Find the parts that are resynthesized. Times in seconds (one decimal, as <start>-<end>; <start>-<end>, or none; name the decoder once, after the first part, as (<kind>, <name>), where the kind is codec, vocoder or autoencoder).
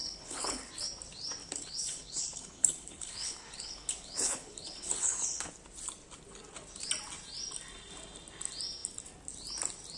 0.0-0.7 (codec, HILCodec); 1.4-5.5